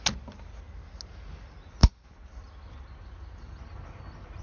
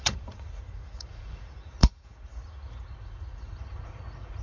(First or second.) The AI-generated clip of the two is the second